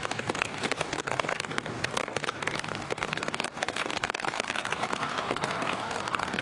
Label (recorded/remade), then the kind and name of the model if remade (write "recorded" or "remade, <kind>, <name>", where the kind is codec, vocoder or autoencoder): remade, codec, DAC